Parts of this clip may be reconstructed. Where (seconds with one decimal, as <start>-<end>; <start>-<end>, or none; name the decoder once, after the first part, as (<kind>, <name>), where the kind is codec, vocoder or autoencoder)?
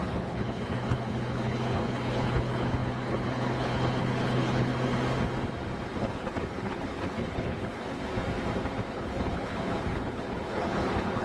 0.0-4.7 (codec, HILCodec); 6.0-8.1; 8.9-11.2